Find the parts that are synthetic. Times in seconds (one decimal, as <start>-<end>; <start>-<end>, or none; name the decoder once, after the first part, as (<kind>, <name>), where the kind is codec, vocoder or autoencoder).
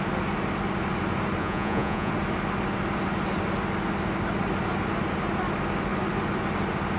1.4-2.1 (vocoder, Vocos)